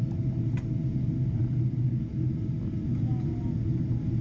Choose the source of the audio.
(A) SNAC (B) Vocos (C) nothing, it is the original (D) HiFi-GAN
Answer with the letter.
C